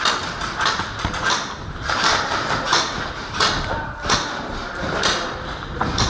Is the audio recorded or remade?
recorded